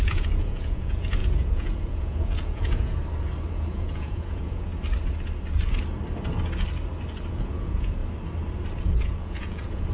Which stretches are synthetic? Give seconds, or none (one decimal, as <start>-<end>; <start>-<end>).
0.0-3.0; 3.5-4.7; 7.3-8.0; 8.8-9.9